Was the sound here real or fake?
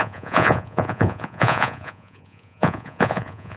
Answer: fake